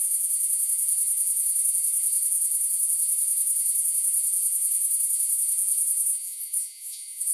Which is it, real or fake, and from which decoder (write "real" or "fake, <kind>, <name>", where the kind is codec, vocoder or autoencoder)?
fake, vocoder, Vocos